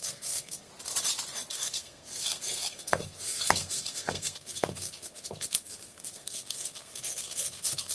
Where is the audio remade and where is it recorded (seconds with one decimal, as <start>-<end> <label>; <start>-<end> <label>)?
0.0-0.7 remade; 0.7-1.5 recorded; 1.5-7.9 remade